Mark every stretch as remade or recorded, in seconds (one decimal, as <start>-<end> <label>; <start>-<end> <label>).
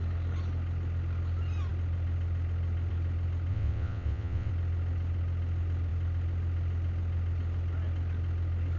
0.0-3.5 recorded; 3.5-4.5 remade; 4.5-8.8 recorded